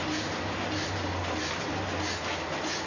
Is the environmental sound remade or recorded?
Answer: recorded